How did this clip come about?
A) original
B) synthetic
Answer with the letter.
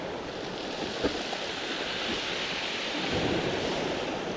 B